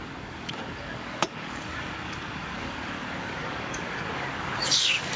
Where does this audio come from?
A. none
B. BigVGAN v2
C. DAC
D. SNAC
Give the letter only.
C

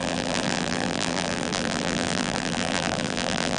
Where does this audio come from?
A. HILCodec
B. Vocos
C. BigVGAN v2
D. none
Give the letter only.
C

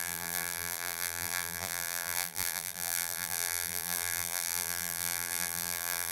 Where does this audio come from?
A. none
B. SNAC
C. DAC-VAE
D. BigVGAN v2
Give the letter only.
D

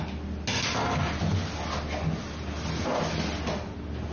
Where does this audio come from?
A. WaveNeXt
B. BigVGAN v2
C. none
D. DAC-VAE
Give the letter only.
C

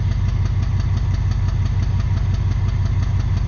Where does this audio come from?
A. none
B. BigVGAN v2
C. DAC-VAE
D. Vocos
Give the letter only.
A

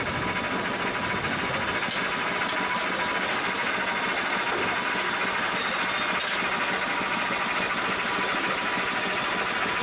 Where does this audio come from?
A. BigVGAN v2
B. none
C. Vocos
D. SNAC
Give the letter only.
B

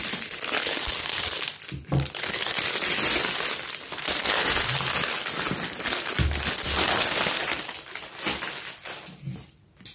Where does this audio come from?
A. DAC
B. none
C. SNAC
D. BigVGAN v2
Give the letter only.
B